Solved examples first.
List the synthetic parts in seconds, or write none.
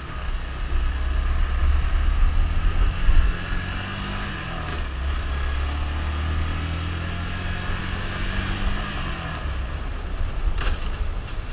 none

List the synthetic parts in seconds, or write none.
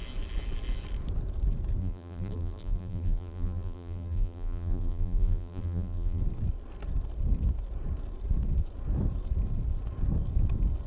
1.8-6.2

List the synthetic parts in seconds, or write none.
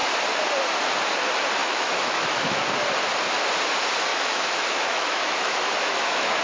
1.6-2.6; 4.1-6.4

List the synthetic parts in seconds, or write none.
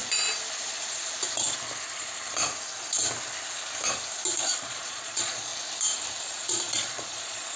4.6-5.5; 6.2-7.6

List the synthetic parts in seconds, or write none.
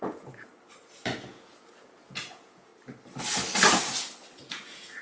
0.0-0.5; 1.3-2.7; 4.5-5.0